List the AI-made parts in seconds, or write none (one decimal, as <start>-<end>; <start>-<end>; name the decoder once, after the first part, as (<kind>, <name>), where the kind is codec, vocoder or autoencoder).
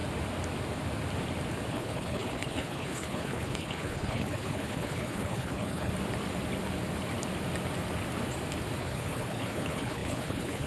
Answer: 1.7-5.9 (codec, HILCodec); 8.8-10.7